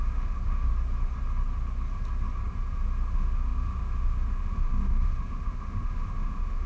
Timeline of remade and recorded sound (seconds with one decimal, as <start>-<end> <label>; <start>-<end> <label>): 0.0-0.7 remade; 0.7-3.1 recorded; 3.1-6.7 remade